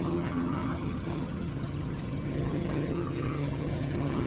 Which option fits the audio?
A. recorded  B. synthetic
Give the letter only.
B